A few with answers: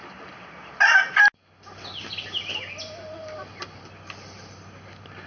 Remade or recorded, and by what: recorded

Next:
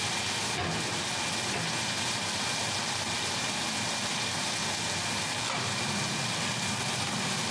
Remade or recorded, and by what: recorded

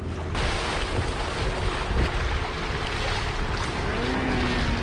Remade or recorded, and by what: recorded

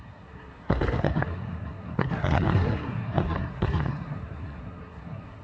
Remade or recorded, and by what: remade, codec, SNAC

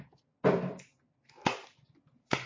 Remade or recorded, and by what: recorded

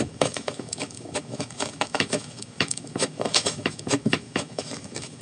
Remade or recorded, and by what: remade, autoencoder, DAC-VAE